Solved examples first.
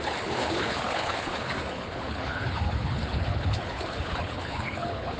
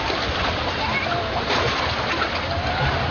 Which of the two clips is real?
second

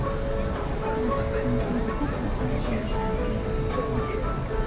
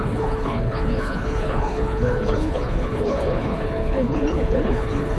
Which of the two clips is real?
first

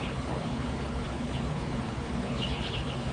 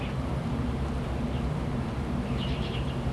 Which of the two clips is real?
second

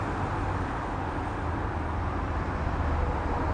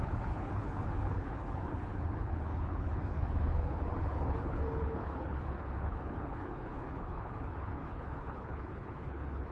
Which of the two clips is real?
first